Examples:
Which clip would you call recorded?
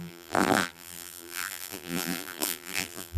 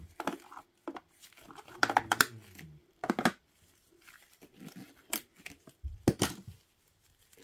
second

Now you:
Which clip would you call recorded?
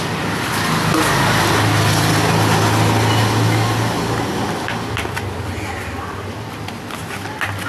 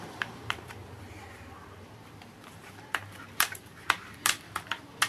first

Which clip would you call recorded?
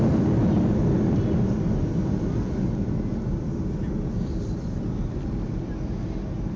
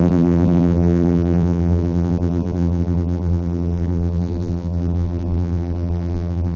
first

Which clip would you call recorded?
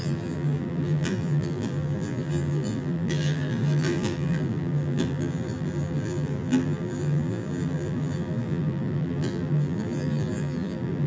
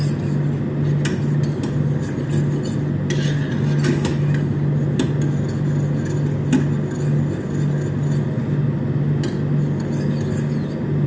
second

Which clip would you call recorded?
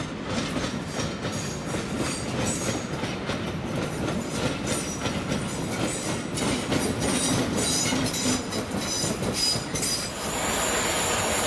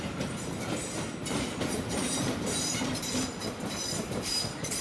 first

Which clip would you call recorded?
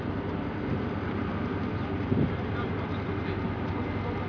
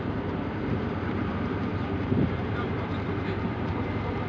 first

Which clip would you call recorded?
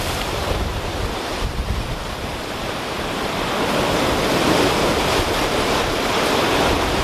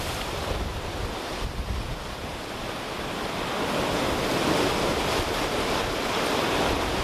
second